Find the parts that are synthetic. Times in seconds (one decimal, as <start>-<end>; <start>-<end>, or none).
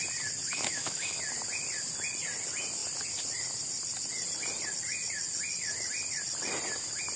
0.5-1.2